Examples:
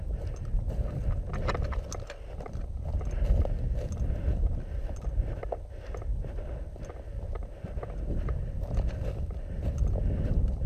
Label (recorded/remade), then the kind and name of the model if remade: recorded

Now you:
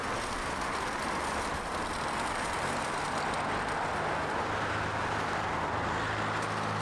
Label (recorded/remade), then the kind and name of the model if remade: recorded